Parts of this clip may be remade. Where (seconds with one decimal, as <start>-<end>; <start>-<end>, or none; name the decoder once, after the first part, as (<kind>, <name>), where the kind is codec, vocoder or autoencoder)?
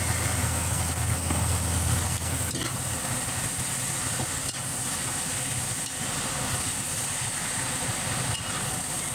0.4-2.5 (codec, SNAC)